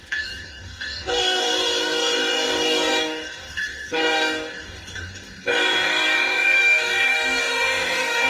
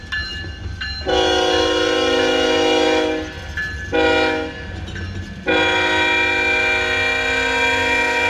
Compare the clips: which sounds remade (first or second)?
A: first